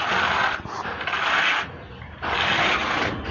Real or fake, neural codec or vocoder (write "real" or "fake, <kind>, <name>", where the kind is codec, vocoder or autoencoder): real